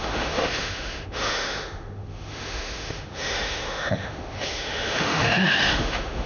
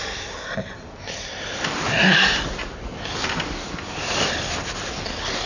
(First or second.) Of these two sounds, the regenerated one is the first